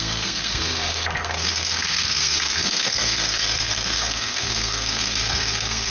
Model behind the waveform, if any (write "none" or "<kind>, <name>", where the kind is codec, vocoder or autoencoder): codec, SNAC